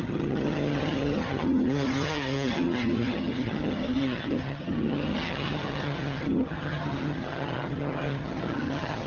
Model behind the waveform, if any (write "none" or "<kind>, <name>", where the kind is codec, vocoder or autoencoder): vocoder, HiFi-GAN